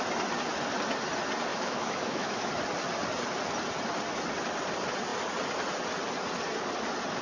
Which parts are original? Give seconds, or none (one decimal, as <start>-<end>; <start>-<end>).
0.0-1.5; 2.5-7.2